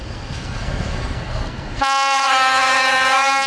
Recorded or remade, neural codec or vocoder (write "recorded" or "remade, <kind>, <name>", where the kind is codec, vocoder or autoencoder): remade, codec, SNAC